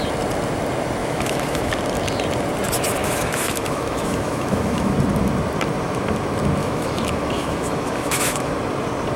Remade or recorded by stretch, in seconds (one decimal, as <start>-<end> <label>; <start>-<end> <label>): 0.0-1.0 recorded; 1.0-1.7 remade; 1.7-3.0 recorded; 3.0-4.9 remade; 4.9-6.6 recorded; 6.6-8.5 remade; 8.5-9.2 recorded